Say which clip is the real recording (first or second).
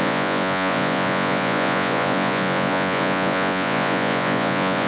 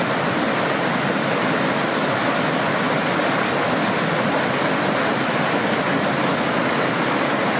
second